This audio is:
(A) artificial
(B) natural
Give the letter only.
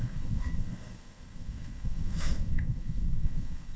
A